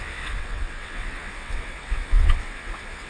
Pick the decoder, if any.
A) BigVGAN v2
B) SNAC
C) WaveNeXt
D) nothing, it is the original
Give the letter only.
C